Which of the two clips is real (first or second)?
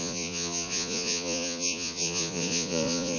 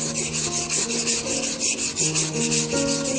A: second